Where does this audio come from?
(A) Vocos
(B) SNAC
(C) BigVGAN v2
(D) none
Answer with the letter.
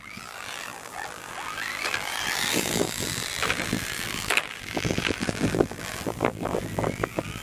C